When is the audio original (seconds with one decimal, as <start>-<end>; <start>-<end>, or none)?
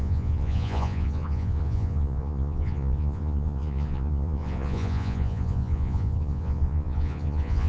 none